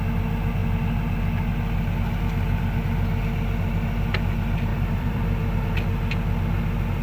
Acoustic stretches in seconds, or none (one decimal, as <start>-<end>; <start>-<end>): 0.0-4.7; 5.7-7.0